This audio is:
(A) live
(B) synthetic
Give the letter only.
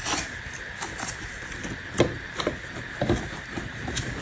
B